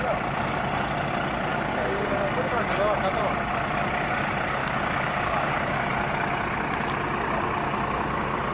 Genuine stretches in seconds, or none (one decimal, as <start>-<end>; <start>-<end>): 0.0-1.5; 2.1-4.6; 5.9-8.5